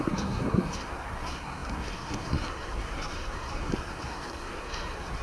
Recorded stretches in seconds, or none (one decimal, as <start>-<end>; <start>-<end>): none